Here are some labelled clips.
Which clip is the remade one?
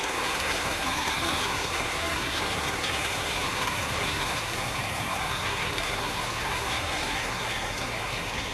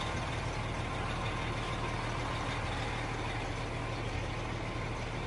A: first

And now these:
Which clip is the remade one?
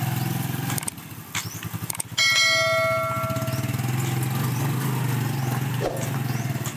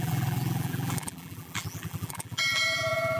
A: second